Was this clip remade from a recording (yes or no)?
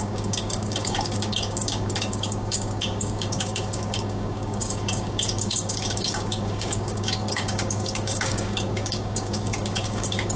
yes